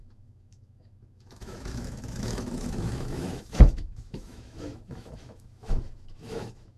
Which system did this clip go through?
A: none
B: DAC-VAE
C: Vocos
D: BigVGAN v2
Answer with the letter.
B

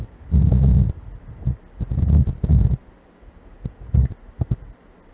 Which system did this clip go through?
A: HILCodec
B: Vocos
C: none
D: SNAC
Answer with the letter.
C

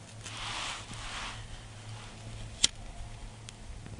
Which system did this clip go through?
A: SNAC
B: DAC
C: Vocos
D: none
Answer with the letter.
D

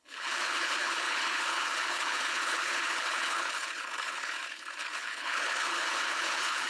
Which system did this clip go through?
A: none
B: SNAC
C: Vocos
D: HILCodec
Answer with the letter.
D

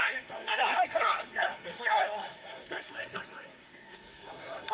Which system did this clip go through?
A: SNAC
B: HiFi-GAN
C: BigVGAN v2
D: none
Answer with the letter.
A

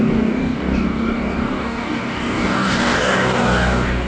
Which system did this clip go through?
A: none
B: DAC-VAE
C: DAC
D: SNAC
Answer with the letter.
C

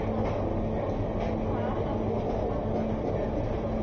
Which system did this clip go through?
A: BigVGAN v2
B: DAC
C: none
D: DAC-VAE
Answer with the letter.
C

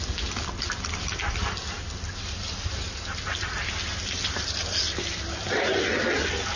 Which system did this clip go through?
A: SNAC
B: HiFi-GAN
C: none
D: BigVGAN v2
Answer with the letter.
C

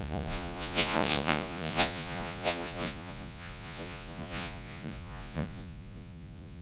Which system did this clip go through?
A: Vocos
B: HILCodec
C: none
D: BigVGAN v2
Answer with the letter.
A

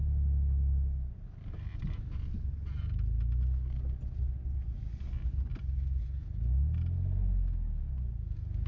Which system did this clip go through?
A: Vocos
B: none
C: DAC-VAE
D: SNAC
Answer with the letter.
B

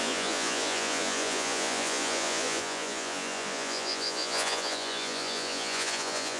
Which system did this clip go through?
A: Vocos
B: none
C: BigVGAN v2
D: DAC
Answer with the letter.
A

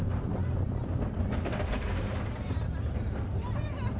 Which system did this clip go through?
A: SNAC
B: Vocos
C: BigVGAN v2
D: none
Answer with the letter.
D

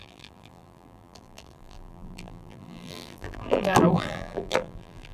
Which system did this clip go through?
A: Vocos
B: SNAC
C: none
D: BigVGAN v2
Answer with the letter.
D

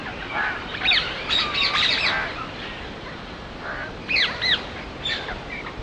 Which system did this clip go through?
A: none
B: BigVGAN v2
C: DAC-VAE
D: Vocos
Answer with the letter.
B